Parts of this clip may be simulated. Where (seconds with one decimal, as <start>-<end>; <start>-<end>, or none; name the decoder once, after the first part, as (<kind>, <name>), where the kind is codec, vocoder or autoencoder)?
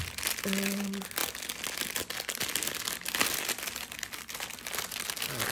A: none